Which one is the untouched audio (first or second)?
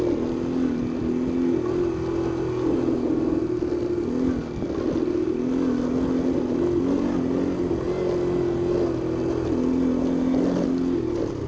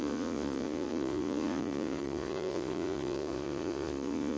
first